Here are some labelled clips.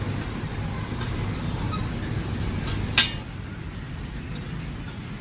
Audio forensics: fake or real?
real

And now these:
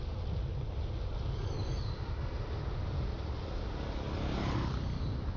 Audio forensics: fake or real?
real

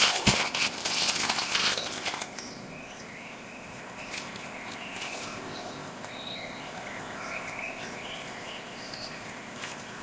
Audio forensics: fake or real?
fake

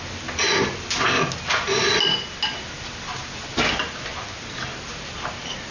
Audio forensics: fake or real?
real